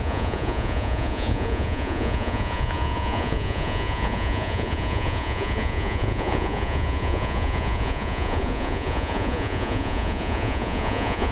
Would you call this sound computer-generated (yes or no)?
yes